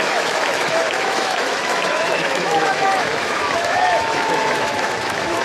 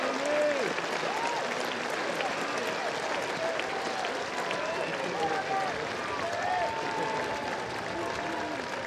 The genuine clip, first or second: second